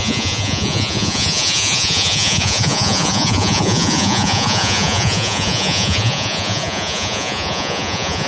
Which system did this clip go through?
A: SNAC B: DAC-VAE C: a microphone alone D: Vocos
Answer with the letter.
D